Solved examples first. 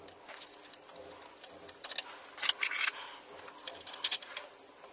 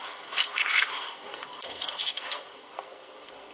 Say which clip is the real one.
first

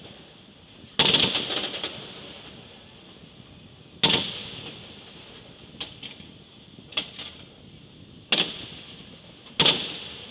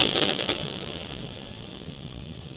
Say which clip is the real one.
first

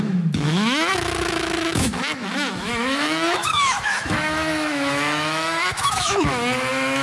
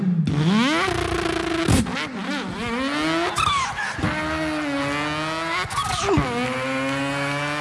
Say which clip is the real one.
second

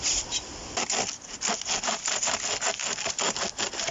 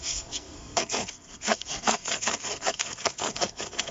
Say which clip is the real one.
first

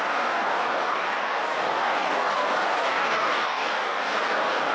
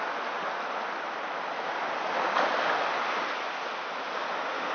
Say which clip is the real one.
second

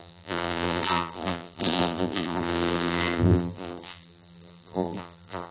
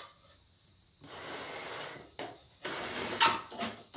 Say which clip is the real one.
second